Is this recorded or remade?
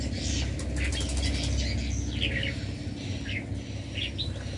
recorded